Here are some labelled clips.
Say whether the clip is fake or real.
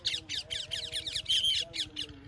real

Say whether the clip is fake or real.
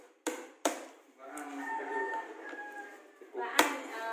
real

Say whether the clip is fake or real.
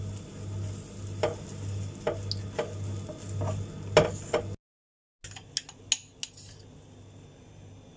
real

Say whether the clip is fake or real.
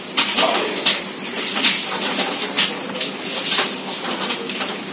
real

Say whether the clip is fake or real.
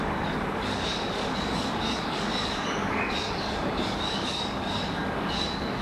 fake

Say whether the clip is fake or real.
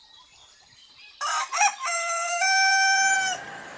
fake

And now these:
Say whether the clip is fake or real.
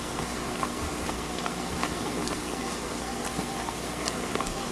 fake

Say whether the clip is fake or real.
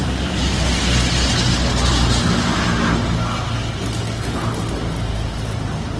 real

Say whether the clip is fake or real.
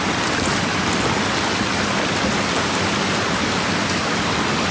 real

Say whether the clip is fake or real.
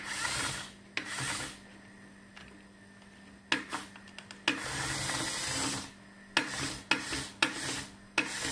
real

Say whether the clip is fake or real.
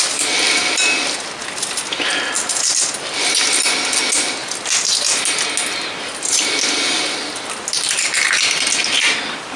real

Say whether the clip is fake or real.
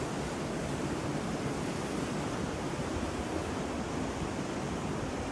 real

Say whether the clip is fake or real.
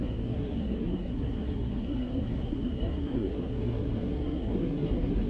fake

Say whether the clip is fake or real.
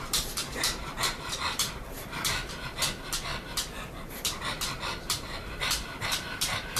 fake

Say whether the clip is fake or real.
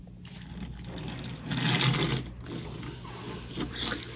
real